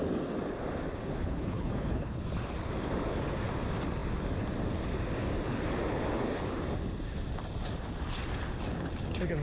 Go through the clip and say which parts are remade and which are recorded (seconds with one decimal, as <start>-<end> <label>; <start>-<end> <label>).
0.0-1.2 recorded; 1.2-2.2 remade; 2.2-9.4 recorded